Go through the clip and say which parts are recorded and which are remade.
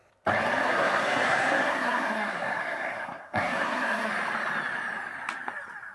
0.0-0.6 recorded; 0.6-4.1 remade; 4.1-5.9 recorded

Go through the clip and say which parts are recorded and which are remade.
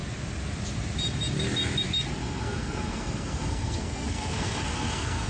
0.0-2.2 recorded; 2.2-5.3 remade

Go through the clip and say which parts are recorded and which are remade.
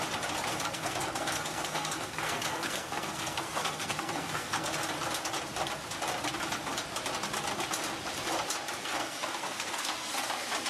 0.0-0.5 recorded; 0.5-4.7 remade; 4.7-8.8 recorded; 8.8-10.1 remade; 10.1-10.7 recorded